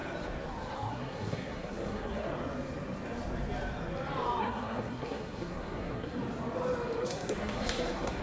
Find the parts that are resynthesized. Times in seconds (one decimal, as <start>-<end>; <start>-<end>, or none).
0.9-2.3; 4.4-6.2; 7.0-8.2

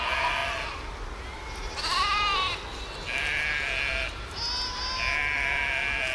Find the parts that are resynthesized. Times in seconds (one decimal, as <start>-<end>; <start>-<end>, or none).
none